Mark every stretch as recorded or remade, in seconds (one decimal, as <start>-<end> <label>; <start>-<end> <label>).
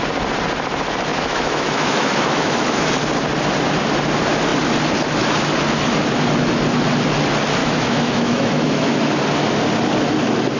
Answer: 0.0-1.1 recorded; 1.1-2.9 remade; 2.9-7.6 recorded; 7.6-9.1 remade; 9.1-10.6 recorded